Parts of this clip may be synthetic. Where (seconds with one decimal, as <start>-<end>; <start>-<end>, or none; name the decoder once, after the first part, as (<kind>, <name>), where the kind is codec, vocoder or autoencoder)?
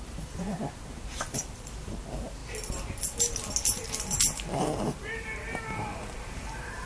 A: 0.0-2.4 (vocoder, BigVGAN v2); 4.6-6.8